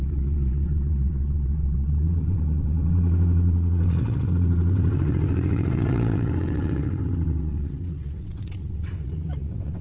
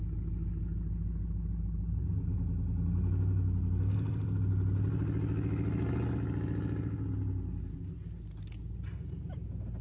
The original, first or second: second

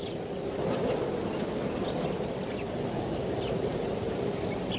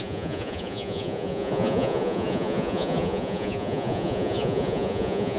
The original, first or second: first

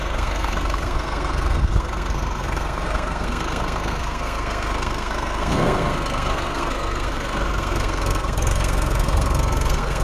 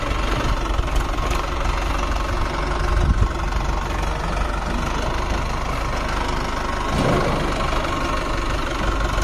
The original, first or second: second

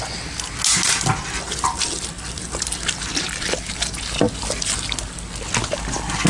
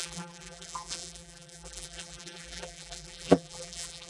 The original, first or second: first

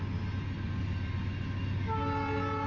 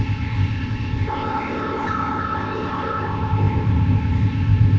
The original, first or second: first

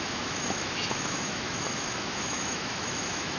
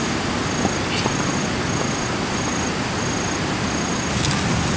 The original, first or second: second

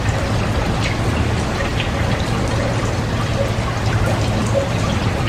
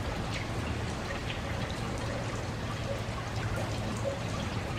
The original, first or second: first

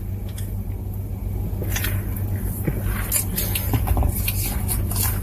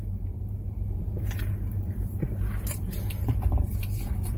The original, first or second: first